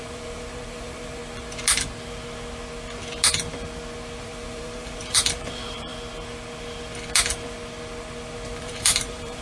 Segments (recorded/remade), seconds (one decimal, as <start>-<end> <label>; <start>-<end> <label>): 0.0-1.2 remade; 1.2-4.2 recorded; 4.2-5.9 remade; 5.9-8.6 recorded; 8.6-9.4 remade